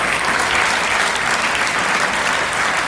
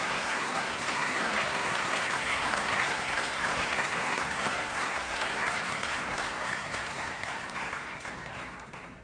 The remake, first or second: second